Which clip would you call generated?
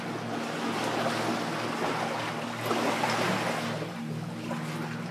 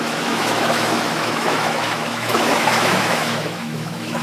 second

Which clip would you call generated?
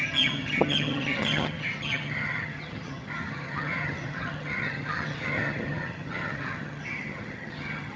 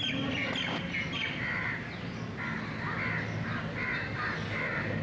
first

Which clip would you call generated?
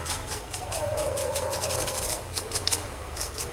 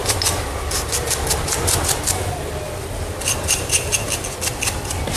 first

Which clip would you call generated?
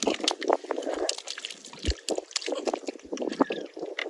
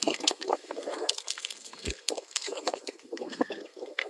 second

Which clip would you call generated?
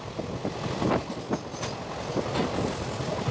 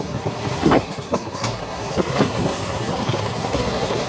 second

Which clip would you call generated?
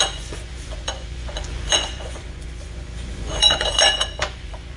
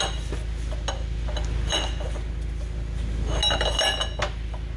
first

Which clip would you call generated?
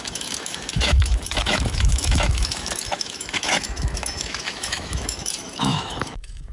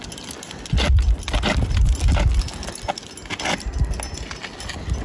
first